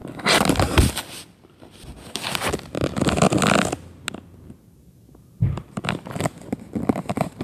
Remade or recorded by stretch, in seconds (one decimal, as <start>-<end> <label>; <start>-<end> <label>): 0.0-7.4 recorded